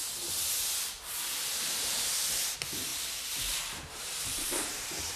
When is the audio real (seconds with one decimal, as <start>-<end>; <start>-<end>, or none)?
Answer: 0.0-1.8; 2.4-2.9